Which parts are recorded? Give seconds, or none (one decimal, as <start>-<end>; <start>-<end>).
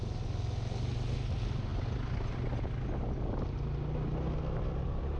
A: 0.0-5.2